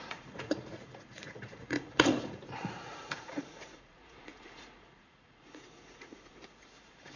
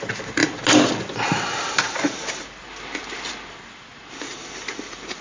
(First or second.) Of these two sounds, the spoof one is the first